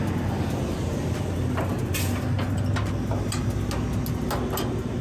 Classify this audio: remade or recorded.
recorded